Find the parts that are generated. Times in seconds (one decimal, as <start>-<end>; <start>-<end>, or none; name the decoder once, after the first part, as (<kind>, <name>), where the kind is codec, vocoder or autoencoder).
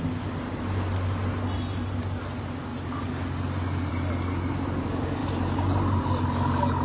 none